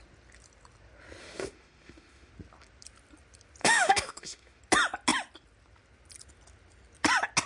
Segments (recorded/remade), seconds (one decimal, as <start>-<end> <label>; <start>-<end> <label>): 0.0-1.2 recorded; 1.2-2.3 remade; 2.3-3.6 recorded; 3.6-4.6 remade; 4.6-7.5 recorded